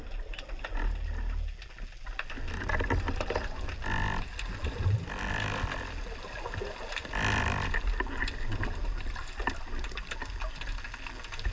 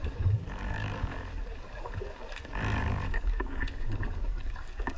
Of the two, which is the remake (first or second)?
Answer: second